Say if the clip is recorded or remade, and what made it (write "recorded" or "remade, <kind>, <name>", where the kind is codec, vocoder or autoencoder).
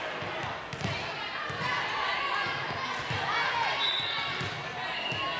recorded